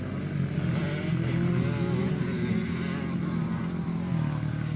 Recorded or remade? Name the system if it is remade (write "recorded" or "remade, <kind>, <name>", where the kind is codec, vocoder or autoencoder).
recorded